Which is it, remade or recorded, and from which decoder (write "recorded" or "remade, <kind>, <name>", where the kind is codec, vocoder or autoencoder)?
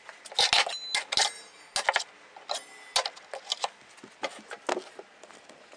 recorded